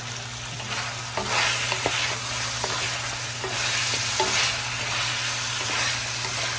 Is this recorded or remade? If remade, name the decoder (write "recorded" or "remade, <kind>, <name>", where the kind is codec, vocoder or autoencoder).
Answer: recorded